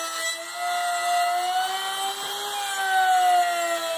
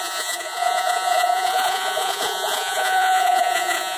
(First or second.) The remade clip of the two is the second